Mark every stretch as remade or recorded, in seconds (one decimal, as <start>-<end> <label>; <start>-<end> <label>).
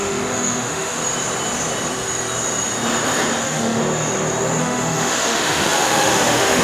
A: 0.0-1.0 remade; 1.0-3.4 recorded; 3.4-3.8 remade; 3.8-4.6 recorded; 4.6-6.6 remade